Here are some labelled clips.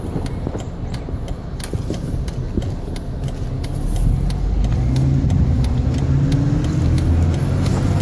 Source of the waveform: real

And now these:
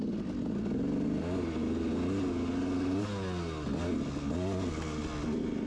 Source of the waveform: real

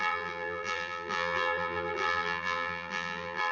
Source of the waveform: fake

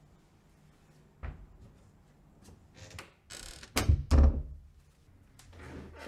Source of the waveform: real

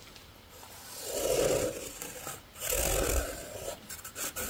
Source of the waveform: fake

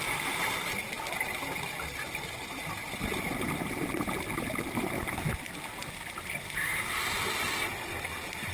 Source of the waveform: real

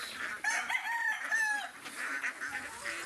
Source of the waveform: real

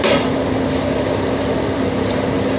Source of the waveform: fake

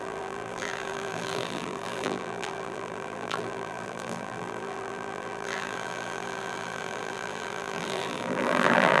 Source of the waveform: fake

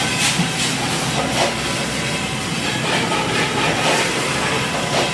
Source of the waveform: real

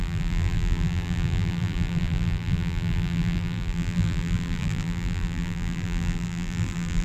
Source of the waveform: fake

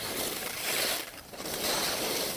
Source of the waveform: fake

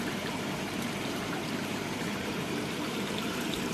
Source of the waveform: fake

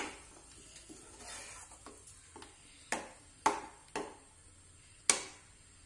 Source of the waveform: real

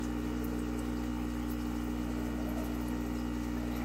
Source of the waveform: real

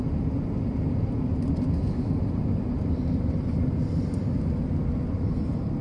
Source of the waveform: real